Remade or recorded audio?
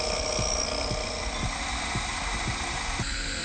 remade